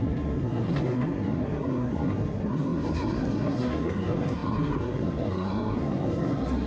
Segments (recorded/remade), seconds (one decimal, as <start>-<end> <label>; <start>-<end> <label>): 0.0-6.7 remade